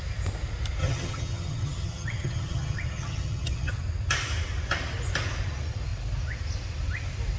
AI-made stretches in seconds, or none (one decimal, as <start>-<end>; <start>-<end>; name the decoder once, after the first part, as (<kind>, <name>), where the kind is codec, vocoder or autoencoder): 0.8-3.7 (vocoder, HiFi-GAN)